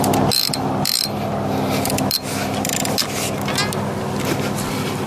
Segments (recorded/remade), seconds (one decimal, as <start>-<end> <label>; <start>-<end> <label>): 0.0-5.1 recorded